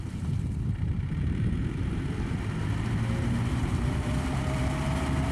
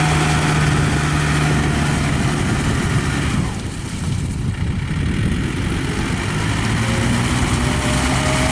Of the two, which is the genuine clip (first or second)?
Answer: second